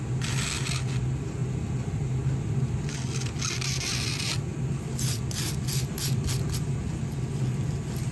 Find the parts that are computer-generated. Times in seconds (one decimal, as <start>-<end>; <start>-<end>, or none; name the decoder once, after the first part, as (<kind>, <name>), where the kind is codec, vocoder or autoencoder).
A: none